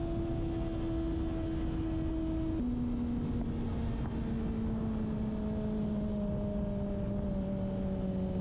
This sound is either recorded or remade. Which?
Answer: recorded